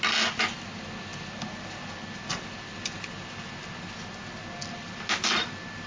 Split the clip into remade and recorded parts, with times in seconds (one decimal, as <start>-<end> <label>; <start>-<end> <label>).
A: 0.0-1.1 recorded; 1.1-2.6 remade; 2.6-5.9 recorded